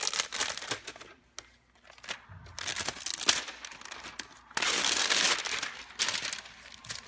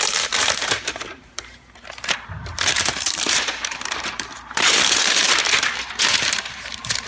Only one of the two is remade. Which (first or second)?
second